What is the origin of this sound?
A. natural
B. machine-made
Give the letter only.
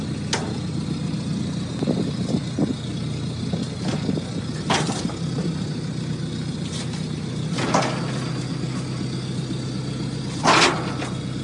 A